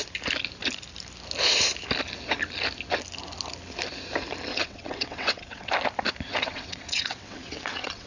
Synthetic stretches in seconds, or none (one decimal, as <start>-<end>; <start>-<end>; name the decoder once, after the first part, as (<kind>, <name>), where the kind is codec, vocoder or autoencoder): 4.5-5.7 (vocoder, WaveNeXt); 6.3-8.1